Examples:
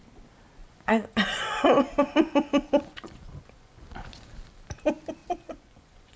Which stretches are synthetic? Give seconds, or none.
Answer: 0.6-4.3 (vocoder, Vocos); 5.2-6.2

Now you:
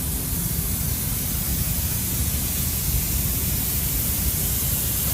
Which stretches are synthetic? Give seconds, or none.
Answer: 1.5-2.8 (vocoder, Vocos)

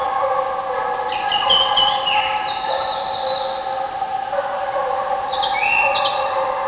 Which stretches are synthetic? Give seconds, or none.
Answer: none

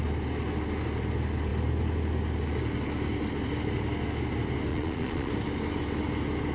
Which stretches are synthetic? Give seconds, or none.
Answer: 4.7-5.3 (vocoder, Vocos)